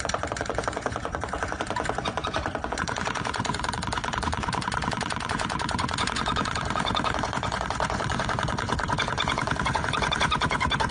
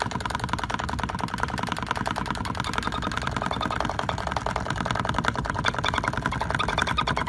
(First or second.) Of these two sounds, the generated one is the first